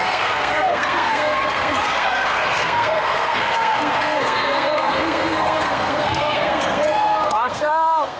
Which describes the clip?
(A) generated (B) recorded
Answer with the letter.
A